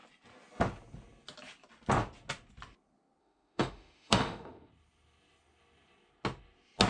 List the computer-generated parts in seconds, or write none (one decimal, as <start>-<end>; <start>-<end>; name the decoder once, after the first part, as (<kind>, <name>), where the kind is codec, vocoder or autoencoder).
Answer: 3.2-4.7 (autoencoder, DAC-VAE)